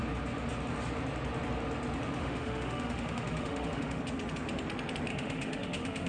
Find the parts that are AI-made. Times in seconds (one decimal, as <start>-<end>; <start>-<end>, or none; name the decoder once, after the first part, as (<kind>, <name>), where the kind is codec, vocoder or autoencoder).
2.2-4.0 (autoencoder, DAC-VAE); 5.1-6.1